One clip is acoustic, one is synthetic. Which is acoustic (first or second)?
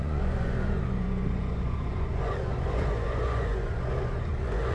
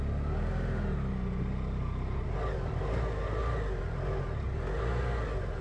second